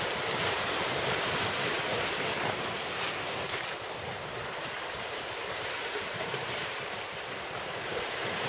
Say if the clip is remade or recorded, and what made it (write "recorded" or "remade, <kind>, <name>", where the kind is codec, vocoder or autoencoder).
remade, vocoder, BigVGAN v2